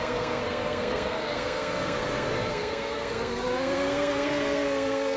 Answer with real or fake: fake